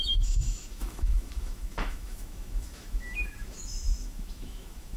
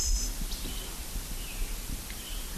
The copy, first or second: first